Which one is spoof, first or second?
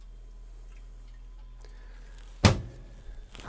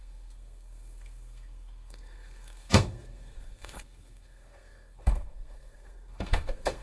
second